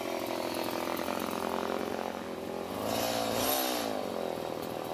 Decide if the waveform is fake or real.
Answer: real